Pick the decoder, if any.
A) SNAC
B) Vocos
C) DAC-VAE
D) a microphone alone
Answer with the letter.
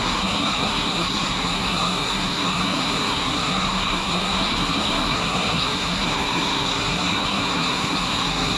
A